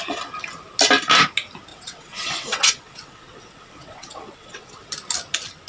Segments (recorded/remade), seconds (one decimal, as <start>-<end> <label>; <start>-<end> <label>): 0.0-1.7 recorded; 1.7-4.9 remade; 4.9-5.7 recorded